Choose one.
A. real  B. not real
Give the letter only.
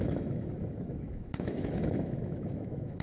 B